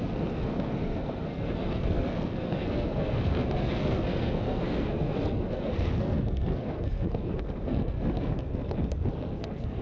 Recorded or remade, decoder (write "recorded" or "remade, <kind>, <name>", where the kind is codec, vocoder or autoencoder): remade, codec, SNAC